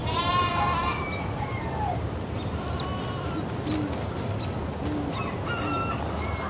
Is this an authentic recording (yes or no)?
yes